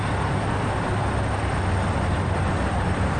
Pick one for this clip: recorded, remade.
recorded